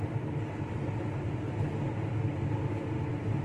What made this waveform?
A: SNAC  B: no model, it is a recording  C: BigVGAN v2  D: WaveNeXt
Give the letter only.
B